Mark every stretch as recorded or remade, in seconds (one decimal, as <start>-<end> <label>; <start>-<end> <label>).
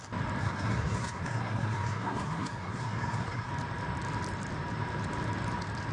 0.0-0.4 recorded; 0.4-3.5 remade; 3.5-5.9 recorded